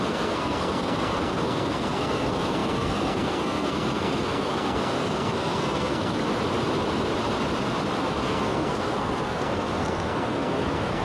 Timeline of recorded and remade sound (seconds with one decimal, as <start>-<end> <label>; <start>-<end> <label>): 0.0-6.2 remade; 6.2-8.0 recorded; 8.0-11.0 remade